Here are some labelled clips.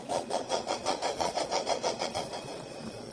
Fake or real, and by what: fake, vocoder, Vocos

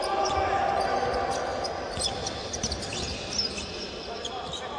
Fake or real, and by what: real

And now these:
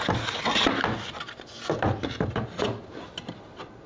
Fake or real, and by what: real